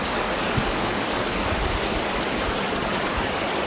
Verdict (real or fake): fake